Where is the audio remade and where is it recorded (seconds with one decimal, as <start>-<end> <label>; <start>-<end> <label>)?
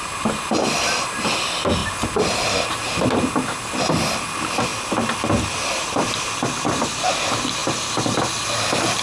0.0-1.8 recorded; 1.8-3.3 remade; 3.3-7.6 recorded; 7.6-8.3 remade; 8.3-9.0 recorded